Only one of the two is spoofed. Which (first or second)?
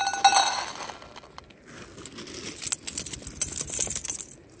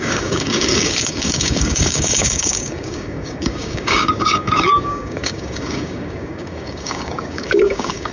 second